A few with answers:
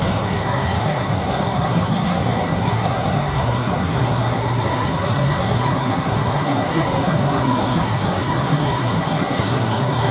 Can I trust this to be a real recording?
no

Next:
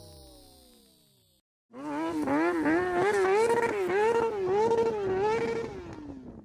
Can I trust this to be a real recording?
yes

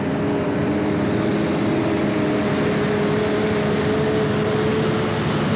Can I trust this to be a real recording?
yes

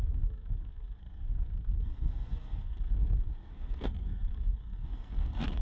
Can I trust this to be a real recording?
no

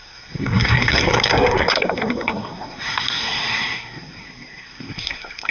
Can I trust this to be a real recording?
no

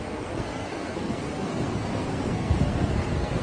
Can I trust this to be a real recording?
no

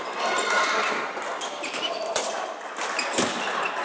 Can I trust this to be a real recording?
yes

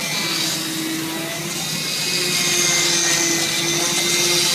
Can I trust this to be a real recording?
yes